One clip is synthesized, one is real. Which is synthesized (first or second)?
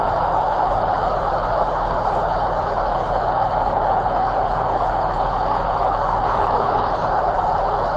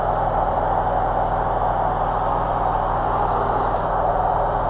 first